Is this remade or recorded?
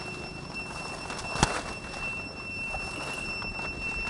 recorded